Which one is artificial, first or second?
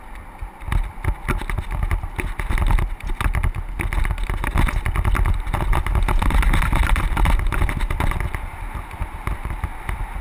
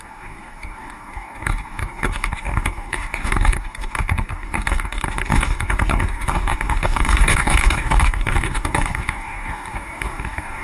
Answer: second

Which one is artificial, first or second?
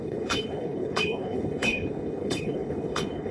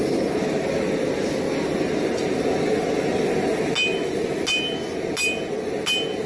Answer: first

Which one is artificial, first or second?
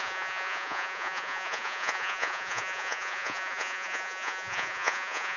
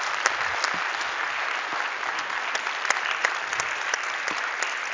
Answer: first